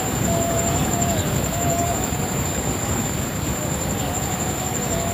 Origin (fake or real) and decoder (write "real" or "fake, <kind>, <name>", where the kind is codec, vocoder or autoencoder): fake, codec, DAC